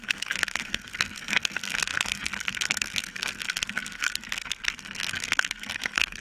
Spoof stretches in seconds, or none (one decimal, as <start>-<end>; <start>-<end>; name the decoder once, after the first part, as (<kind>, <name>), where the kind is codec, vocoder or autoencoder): 0.0-6.2 (codec, SNAC)